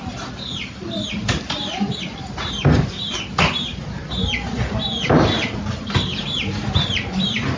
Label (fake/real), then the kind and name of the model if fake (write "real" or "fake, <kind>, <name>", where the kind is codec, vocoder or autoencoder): real